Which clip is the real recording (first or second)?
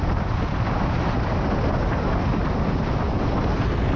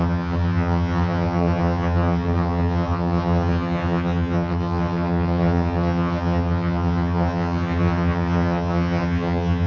first